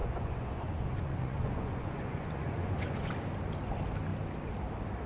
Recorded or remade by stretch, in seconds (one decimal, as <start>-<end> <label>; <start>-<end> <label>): 0.0-3.1 remade; 3.1-5.1 recorded